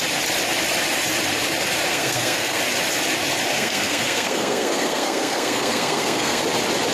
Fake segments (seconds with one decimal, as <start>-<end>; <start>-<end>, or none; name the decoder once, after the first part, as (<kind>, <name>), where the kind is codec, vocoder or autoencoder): 1.9-2.6 (codec, SNAC); 3.5-6.4